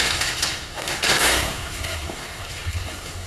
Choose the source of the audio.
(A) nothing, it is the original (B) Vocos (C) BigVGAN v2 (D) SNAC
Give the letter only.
D